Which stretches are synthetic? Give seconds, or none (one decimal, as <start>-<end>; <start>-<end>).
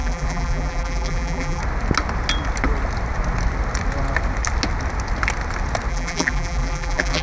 0.0-1.6; 5.9-7.2